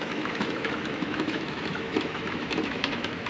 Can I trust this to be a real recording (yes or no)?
no